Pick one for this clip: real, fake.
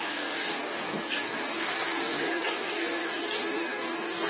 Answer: fake